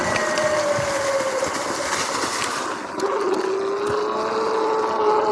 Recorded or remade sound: recorded